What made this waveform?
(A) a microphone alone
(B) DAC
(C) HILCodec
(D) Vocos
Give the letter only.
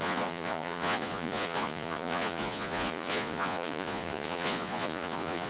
D